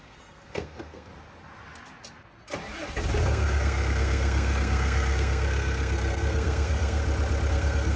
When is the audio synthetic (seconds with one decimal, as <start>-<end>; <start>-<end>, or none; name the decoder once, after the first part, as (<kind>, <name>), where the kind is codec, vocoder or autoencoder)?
0.0-1.1 (codec, SNAC); 3.2-7.0; 7.5-8.0

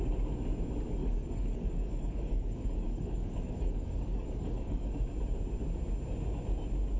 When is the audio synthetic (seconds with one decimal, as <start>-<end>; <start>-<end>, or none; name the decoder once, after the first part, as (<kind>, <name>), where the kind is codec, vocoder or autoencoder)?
1.0-4.9 (codec, DAC)

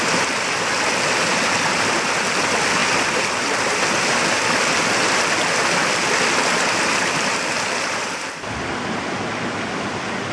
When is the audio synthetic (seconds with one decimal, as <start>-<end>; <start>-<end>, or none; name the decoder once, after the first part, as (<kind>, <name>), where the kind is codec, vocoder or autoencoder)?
none

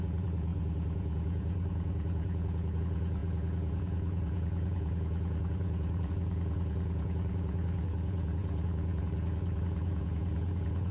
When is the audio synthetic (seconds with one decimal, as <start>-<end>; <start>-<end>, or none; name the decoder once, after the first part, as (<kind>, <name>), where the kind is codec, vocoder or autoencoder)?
0.0-10.9 (vocoder, Vocos)

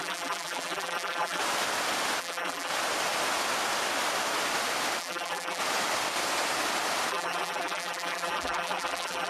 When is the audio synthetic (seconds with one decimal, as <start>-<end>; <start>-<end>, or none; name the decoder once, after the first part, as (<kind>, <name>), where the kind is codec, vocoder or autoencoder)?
0.0-1.4 (vocoder, BigVGAN v2); 2.2-2.7; 5.0-5.6; 7.1-9.3

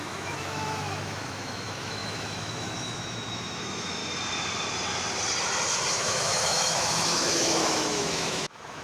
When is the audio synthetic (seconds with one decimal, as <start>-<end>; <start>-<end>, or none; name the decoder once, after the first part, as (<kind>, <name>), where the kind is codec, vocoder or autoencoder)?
0.0-4.0 (autoencoder, DAC-VAE); 5.9-8.8

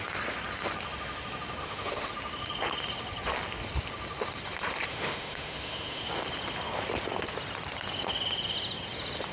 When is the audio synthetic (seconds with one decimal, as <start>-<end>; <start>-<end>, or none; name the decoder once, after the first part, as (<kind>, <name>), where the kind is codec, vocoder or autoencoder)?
1.6-2.1 (autoencoder, DAC-VAE); 4.9-6.0